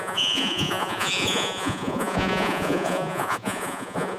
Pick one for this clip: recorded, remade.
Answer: remade